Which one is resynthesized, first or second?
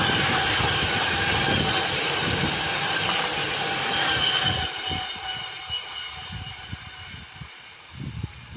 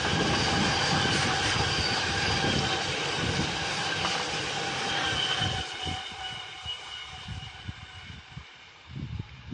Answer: second